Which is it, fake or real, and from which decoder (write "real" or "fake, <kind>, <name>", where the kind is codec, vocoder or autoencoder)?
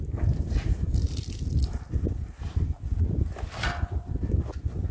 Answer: real